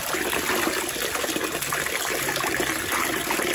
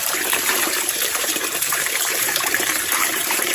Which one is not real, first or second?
second